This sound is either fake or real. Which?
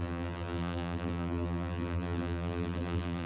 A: fake